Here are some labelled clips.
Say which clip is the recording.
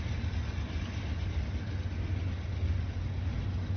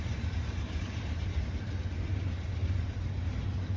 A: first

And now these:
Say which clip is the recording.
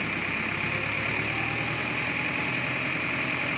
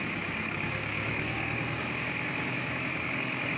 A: first